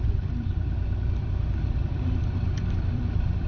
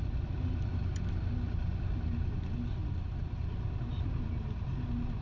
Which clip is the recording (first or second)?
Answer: second